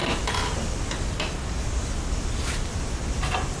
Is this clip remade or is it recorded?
recorded